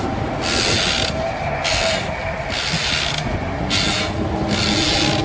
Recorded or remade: recorded